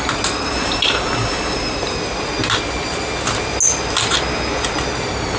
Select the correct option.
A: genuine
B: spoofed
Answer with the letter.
A